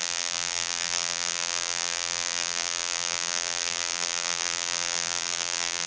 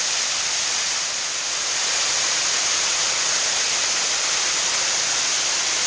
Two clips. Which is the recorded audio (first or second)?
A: second